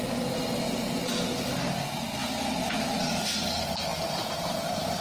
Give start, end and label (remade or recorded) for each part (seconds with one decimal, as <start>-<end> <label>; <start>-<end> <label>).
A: 0.0-5.0 recorded

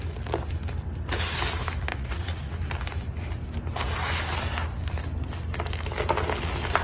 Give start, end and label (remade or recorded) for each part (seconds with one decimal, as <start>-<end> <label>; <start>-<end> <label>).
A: 0.0-1.9 recorded; 1.9-2.6 remade; 2.6-6.8 recorded

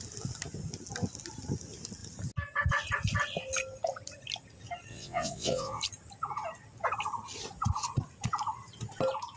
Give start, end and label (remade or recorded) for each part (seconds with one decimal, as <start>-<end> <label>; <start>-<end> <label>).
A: 0.0-4.9 recorded; 4.9-5.8 remade; 5.8-9.4 recorded

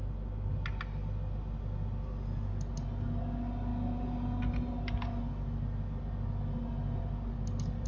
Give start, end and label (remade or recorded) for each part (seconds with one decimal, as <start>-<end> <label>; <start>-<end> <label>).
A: 0.0-7.9 recorded

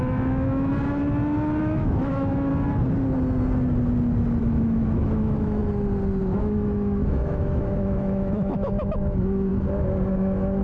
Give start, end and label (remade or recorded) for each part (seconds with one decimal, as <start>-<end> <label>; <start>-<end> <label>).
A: 0.0-0.7 remade; 0.7-1.6 recorded; 1.6-2.5 remade; 2.5-4.4 recorded; 4.4-5.6 remade; 5.6-6.2 recorded; 6.2-9.5 remade; 9.5-10.1 recorded; 10.1-10.6 remade

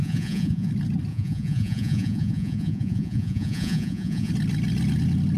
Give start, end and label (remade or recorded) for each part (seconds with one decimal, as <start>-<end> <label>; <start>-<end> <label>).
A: 0.0-0.7 remade; 0.7-1.1 recorded; 1.1-4.3 remade; 4.3-5.4 recorded

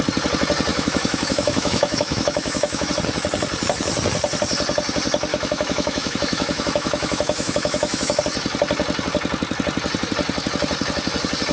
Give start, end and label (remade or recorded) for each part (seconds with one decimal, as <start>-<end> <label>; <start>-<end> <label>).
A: 0.0-0.7 recorded; 0.7-2.9 remade; 2.9-5.3 recorded; 5.3-8.2 remade; 8.2-11.5 recorded

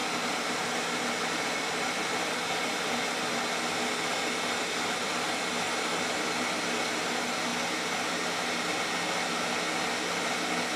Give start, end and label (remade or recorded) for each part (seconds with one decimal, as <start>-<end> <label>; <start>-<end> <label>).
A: 0.0-10.8 recorded